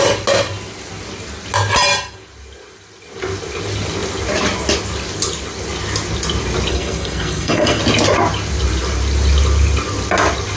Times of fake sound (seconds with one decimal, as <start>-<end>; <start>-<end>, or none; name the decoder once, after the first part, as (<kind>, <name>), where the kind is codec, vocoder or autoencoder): 6.7-7.8 (codec, SNAC)